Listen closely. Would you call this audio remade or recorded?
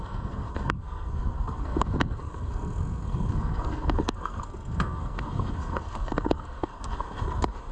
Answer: remade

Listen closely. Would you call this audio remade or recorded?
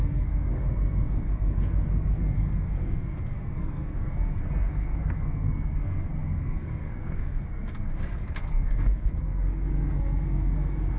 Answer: remade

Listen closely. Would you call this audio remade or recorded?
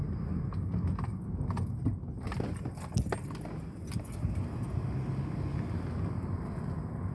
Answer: recorded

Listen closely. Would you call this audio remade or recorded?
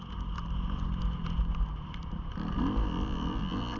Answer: recorded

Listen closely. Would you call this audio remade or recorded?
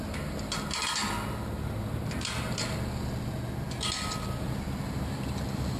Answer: recorded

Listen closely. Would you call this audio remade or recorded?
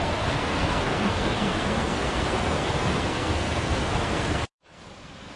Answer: remade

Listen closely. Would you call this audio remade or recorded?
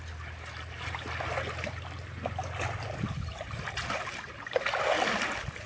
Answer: recorded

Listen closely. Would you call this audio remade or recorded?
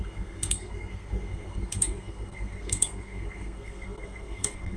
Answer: remade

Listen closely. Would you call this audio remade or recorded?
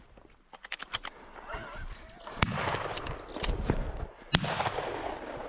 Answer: recorded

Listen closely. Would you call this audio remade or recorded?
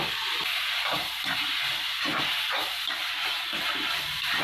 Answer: recorded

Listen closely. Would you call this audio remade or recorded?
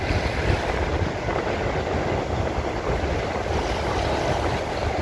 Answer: recorded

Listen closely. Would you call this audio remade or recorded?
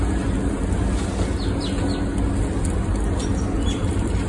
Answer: recorded